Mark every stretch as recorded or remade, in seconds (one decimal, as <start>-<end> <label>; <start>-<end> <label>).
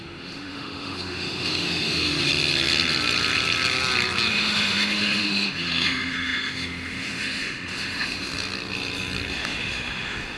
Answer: 0.0-2.3 remade; 2.3-4.3 recorded; 4.3-8.3 remade; 8.3-9.3 recorded; 9.3-10.4 remade